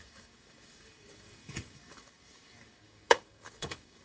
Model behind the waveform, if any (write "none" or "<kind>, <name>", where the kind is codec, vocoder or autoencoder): codec, DAC